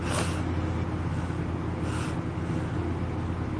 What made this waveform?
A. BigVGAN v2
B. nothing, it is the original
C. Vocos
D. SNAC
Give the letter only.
B